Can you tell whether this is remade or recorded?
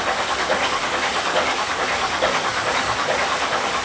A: remade